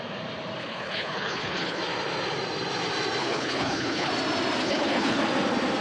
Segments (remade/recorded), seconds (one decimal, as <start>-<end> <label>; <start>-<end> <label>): 0.0-0.6 recorded; 0.6-1.8 remade; 1.8-3.2 recorded; 3.2-4.1 remade; 4.1-4.6 recorded; 4.6-5.2 remade; 5.2-5.8 recorded